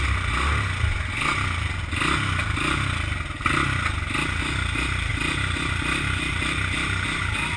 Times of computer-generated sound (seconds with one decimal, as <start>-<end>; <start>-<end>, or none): none